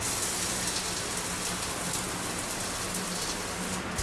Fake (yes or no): no